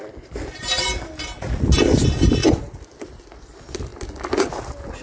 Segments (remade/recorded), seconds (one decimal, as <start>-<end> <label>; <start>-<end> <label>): 0.0-5.0 recorded